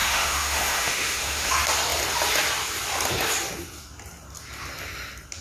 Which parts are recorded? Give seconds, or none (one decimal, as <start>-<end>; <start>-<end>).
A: 1.5-5.4